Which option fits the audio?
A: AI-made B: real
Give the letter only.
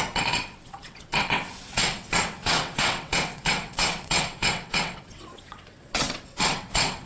A